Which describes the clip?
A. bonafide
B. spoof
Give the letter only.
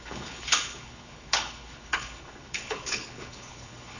B